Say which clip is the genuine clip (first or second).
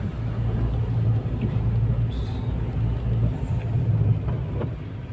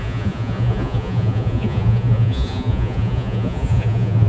first